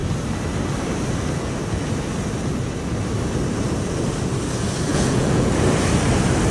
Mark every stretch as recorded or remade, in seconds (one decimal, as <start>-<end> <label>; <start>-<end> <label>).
0.0-4.9 recorded; 4.9-5.5 remade; 5.5-6.5 recorded